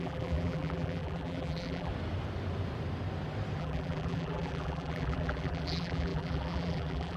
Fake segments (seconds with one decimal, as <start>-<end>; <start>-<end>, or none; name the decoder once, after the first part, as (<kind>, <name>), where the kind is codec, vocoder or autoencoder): 0.0-1.9 (vocoder, BigVGAN v2); 3.6-7.2